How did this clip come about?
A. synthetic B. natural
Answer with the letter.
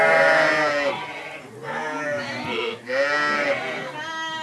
B